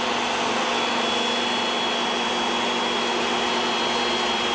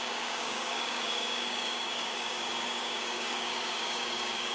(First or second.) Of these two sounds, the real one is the first